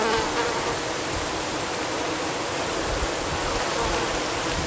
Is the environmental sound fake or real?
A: real